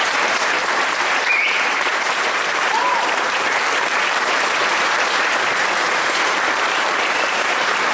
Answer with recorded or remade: remade